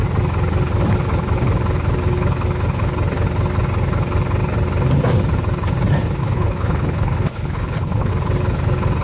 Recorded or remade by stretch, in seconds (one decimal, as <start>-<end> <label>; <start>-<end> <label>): 0.0-6.2 recorded; 6.2-8.1 remade; 8.1-9.0 recorded